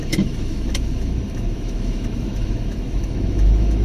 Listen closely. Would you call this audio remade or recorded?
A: remade